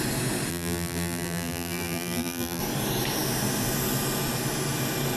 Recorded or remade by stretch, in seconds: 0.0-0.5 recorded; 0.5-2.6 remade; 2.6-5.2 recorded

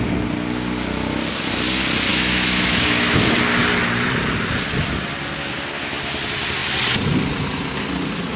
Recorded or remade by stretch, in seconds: 0.0-2.1 recorded; 2.1-3.2 remade; 3.2-8.4 recorded

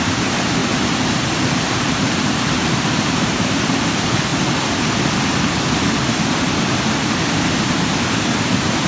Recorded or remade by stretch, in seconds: 0.0-0.6 remade; 0.6-1.6 recorded; 1.6-4.3 remade; 4.3-7.6 recorded; 7.6-8.9 remade

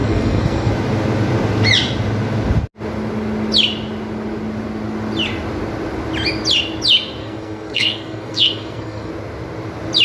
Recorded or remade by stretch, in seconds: 0.0-0.7 remade; 0.7-7.2 recorded; 7.2-9.1 remade; 9.1-10.0 recorded

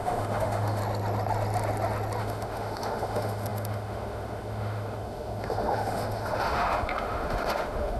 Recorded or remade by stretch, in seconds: 0.0-0.8 remade; 0.8-2.2 recorded; 2.2-8.0 remade

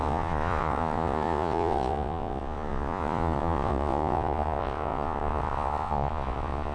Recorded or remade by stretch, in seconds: 0.0-6.7 remade

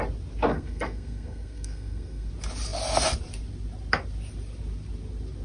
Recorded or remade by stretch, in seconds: 0.0-0.5 recorded; 0.5-2.3 remade; 2.3-5.4 recorded

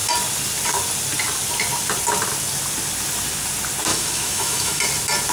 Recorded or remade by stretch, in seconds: 0.0-3.9 recorded; 3.9-4.8 remade; 4.8-5.3 recorded